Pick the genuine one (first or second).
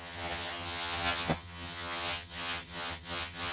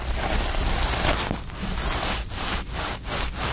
second